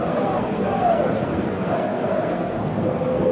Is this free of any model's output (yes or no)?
no